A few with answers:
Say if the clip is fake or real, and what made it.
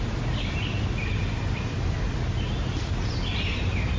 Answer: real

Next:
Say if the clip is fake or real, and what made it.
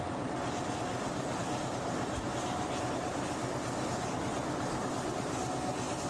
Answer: real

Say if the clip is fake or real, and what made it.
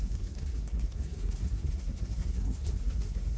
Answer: fake, codec, SNAC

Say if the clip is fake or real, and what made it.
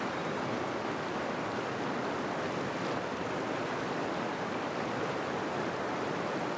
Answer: real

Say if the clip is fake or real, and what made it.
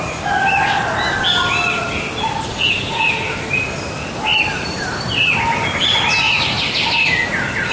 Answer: real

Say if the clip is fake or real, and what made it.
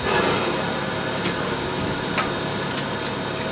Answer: real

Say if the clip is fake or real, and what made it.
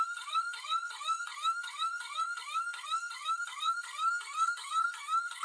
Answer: fake, codec, SNAC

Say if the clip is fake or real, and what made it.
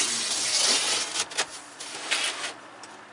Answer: real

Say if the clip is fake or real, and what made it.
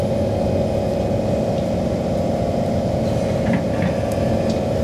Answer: real